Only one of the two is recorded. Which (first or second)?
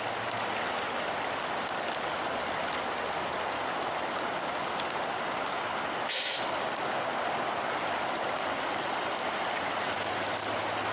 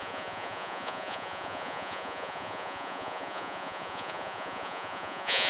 first